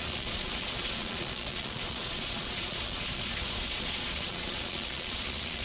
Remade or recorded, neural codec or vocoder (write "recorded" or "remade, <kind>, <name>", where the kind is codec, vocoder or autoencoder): remade, vocoder, Vocos